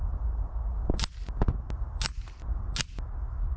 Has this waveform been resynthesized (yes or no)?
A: no